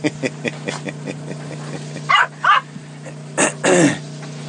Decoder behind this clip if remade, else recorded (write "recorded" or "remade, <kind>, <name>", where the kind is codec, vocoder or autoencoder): recorded